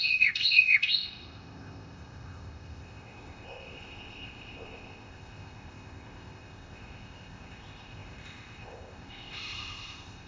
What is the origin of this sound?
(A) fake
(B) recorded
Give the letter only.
A